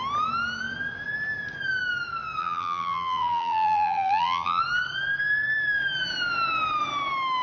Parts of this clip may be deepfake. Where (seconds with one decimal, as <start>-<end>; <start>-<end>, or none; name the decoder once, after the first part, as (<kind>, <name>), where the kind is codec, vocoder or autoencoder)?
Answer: 2.4-4.6 (vocoder, BigVGAN v2)

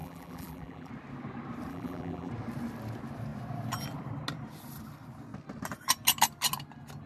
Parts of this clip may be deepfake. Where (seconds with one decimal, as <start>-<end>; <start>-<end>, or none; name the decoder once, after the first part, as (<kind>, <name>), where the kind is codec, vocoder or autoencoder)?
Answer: 0.0-0.9 (vocoder, BigVGAN v2); 1.7-2.3

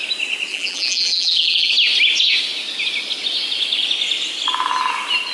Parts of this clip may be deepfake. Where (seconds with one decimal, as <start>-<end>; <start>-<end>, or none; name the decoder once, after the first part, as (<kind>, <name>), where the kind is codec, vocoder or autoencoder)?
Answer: 0.5-1.7 (vocoder, BigVGAN v2)

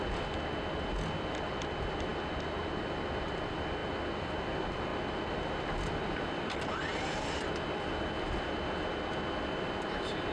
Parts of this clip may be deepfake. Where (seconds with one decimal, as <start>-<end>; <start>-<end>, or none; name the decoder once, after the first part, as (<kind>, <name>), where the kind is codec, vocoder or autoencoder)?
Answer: none

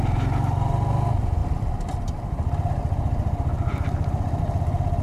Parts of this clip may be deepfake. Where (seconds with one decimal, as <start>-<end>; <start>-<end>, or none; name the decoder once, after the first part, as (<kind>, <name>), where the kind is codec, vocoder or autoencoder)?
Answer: none

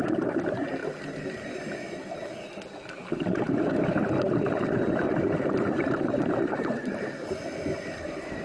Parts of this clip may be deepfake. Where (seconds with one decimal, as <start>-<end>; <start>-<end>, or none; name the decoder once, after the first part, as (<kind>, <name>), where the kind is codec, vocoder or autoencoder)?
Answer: 0.0-0.8 (vocoder, BigVGAN v2); 5.2-8.4

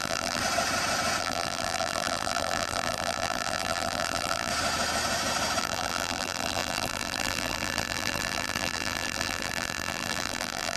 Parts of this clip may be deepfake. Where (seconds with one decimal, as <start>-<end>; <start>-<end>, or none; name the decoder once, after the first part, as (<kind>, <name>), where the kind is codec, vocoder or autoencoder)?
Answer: 0.0-0.4 (vocoder, BigVGAN v2); 1.2-4.5; 5.6-10.8